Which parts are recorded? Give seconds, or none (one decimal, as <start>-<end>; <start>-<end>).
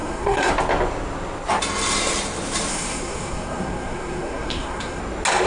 0.5-2.7; 5.0-5.5